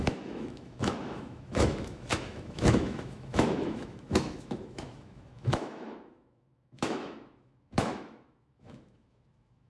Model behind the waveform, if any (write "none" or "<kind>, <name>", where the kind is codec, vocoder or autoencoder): autoencoder, DAC-VAE